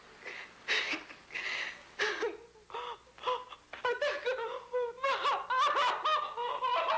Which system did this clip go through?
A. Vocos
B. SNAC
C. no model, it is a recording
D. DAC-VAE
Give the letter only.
C